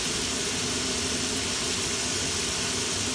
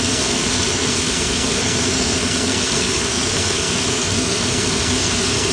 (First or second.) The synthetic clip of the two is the second